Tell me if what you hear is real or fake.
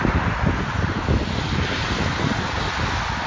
real